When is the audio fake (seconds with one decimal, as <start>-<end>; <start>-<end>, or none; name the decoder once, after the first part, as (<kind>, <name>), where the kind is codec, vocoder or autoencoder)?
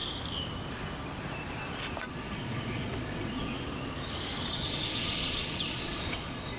2.1-3.5 (vocoder, Vocos); 4.5-6.6